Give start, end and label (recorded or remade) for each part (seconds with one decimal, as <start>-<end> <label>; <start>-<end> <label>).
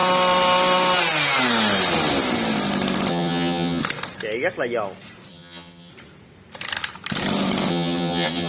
0.0-3.1 recorded; 3.1-3.8 remade; 3.8-5.3 recorded; 5.3-5.9 remade; 5.9-7.7 recorded; 7.7-8.5 remade